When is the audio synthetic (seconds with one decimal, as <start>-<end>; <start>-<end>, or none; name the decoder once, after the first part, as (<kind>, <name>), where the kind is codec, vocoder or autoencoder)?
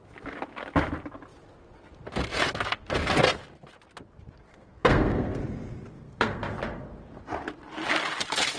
4.5-5.4 (codec, SNAC); 5.9-6.4